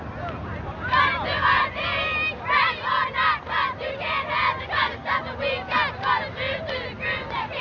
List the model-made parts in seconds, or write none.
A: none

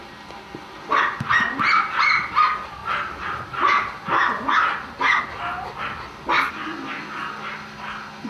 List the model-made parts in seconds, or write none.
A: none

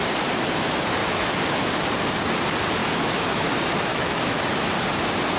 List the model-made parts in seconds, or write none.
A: 1.0-1.7 (autoencoder, DAC-VAE); 2.8-3.5; 3.9-4.7

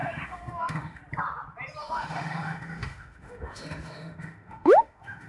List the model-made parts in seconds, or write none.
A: 0.0-1.0 (autoencoder, DAC-VAE); 1.8-5.3

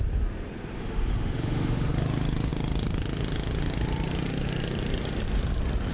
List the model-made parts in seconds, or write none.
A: 0.8-1.9 (autoencoder, DAC-VAE)